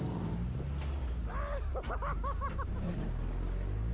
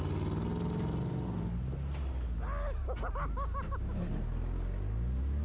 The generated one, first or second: first